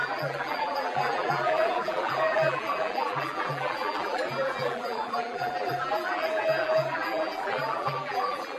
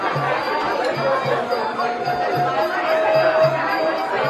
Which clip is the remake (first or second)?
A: first